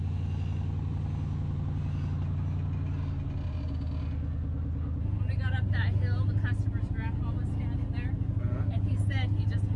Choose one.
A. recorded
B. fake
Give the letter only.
A